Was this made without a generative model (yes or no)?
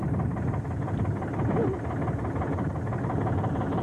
yes